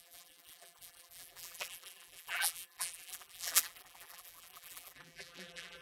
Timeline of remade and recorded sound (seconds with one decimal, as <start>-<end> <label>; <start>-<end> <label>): 0.0-5.8 remade